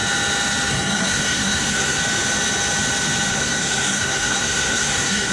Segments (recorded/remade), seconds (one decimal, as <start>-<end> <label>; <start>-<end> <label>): 0.0-0.7 recorded; 0.7-2.0 remade; 2.0-3.3 recorded; 3.3-5.3 remade